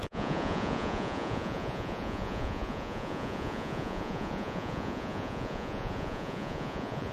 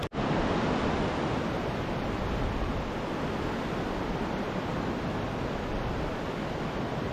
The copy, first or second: first